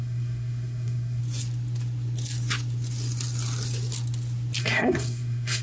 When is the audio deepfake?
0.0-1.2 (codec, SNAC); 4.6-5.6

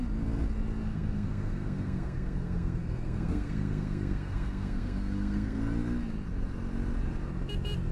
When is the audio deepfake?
0.9-5.6 (codec, SNAC)

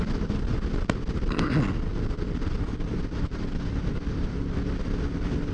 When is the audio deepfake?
none

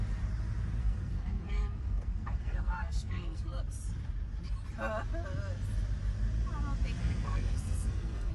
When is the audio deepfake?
0.8-3.6 (codec, SNAC); 7.0-8.3

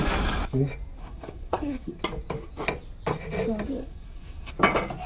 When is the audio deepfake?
1.0-2.0 (codec, SNAC); 3.8-4.5

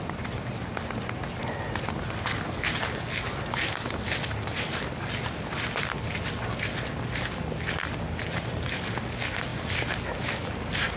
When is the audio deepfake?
none

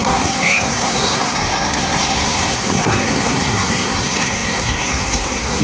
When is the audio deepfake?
0.0-5.6 (codec, SNAC)

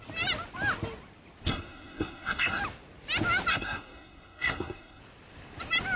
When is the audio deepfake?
1.5-2.6 (codec, SNAC); 3.5-5.0